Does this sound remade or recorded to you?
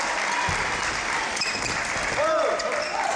recorded